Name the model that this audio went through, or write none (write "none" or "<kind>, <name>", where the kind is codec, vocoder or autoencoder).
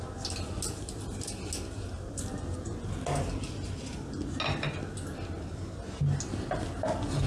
none